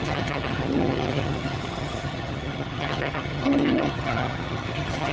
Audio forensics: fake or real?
fake